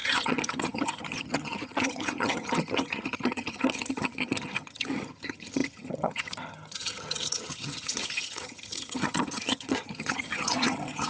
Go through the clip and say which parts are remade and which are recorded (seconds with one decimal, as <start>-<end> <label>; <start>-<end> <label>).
0.0-11.1 remade